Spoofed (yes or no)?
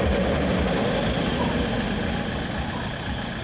no